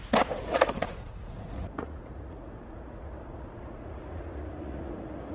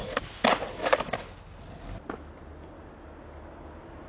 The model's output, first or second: first